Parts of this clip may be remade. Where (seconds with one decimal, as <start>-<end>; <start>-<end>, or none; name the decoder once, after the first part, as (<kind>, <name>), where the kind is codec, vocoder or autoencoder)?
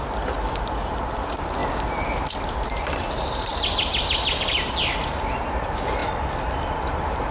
none